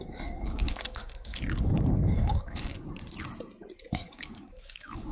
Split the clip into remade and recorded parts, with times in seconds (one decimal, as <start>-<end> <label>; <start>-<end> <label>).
0.0-2.7 remade; 2.7-3.9 recorded; 3.9-5.1 remade